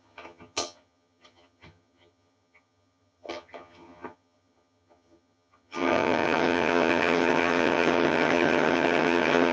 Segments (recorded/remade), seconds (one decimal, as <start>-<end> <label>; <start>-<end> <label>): 0.0-9.5 remade